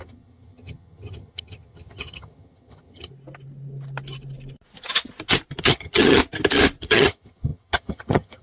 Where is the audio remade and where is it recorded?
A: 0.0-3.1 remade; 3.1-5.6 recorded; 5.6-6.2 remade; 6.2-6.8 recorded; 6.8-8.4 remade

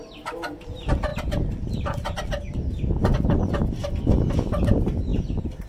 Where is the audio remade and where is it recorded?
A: 0.0-5.7 recorded

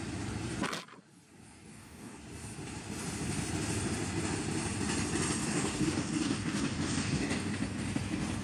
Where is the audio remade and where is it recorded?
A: 0.0-1.7 recorded; 1.7-2.2 remade; 2.2-5.4 recorded; 5.4-7.5 remade; 7.5-8.4 recorded

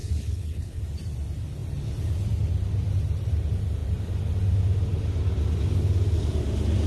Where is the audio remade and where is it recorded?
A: 0.0-0.8 remade; 0.8-6.9 recorded

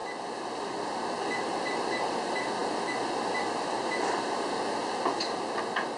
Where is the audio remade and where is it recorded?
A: 0.0-6.0 recorded

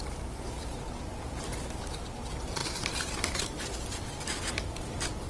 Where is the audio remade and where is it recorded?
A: 0.0-5.3 remade